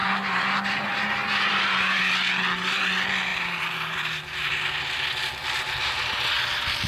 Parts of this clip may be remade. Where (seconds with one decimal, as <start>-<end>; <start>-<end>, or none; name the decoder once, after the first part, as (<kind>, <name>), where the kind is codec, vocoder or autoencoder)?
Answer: 0.0-2.0 (vocoder, BigVGAN v2); 3.3-4.5; 5.4-6.3